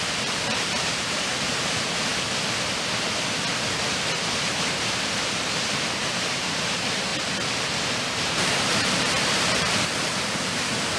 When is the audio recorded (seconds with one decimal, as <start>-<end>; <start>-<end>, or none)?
2.1-3.5; 7.1-8.1